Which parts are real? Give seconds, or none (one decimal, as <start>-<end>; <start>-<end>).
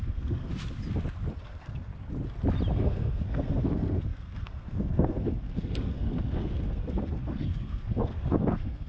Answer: 0.5-1.4; 1.9-2.7